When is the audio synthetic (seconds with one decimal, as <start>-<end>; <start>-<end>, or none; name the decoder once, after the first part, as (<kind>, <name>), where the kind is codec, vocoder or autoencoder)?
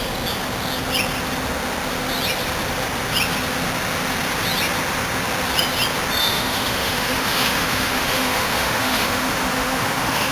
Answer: 6.2-10.3 (autoencoder, DAC-VAE)